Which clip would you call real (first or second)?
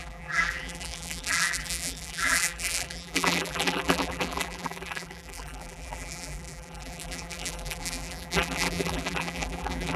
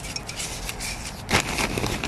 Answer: second